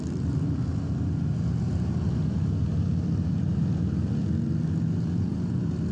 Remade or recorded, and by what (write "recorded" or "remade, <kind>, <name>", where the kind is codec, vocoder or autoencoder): recorded